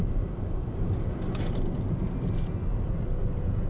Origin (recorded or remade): recorded